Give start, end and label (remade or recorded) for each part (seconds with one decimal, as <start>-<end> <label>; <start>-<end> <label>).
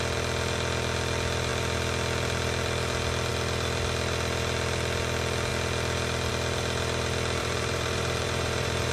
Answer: 0.0-7.4 recorded; 7.4-8.9 remade